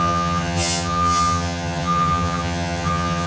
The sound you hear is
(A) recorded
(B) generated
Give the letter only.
B